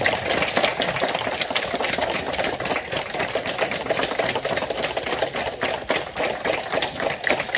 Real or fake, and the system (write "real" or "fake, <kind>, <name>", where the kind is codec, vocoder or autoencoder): real